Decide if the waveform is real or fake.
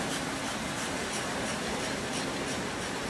real